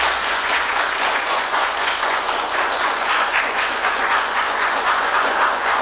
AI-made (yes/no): yes